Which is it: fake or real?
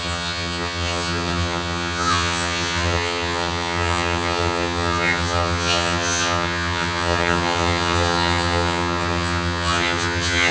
fake